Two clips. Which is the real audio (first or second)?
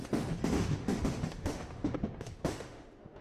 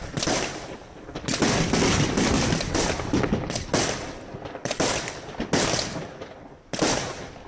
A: second